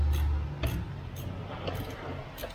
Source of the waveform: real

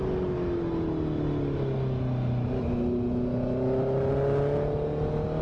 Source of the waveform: real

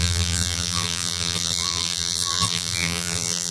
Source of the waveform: fake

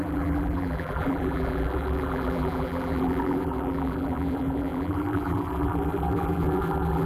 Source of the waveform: fake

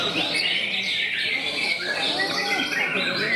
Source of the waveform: real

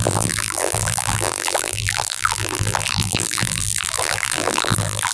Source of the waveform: fake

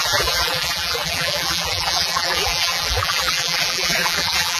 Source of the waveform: fake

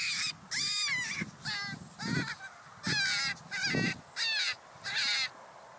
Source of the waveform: real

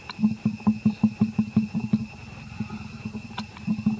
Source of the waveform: real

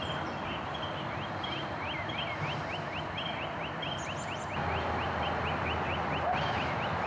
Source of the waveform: real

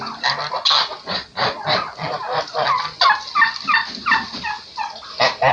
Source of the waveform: real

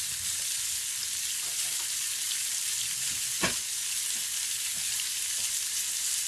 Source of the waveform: real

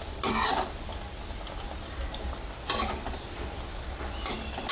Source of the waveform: fake